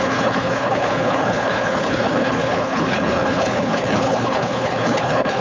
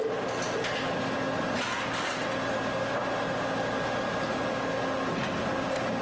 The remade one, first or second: first